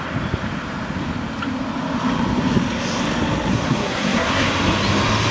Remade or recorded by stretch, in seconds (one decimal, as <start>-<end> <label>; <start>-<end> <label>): 0.0-3.5 recorded; 3.5-4.5 remade; 4.5-5.3 recorded